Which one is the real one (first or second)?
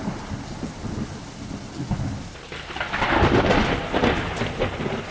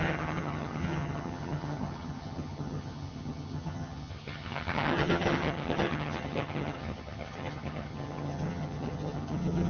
first